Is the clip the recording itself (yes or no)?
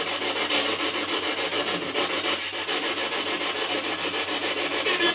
yes